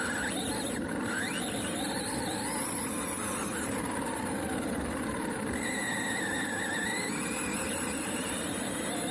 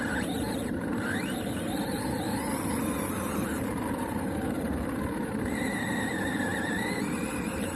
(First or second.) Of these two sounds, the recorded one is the first